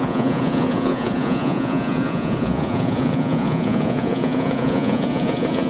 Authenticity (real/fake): fake